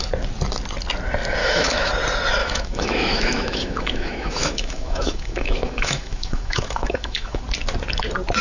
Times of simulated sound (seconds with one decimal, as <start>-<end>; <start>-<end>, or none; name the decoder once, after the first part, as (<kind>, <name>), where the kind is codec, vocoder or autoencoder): 1.4-1.9 (autoencoder, DAC-VAE); 2.4-7.4